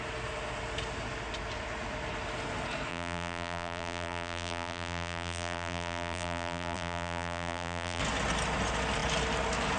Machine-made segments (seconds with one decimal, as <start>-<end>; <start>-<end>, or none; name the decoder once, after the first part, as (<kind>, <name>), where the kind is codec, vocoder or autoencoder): 2.9-8.0 (vocoder, BigVGAN v2)